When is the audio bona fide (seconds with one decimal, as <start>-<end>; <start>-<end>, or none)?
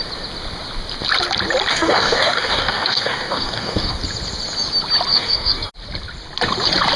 0.0-1.7; 4.0-5.1; 5.7-7.0